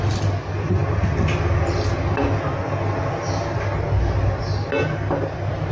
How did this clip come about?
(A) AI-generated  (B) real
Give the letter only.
B